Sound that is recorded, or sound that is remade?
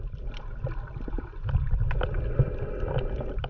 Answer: recorded